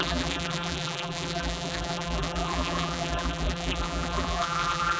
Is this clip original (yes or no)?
no